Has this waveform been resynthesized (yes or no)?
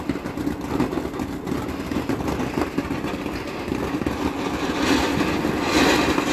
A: no